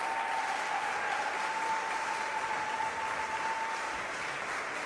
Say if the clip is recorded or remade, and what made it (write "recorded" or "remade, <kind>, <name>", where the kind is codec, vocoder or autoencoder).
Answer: recorded